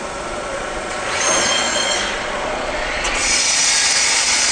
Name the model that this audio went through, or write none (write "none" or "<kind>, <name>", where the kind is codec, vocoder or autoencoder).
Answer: vocoder, Vocos